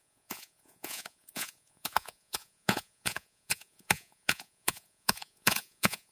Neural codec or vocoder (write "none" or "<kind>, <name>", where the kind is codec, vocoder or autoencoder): vocoder, Vocos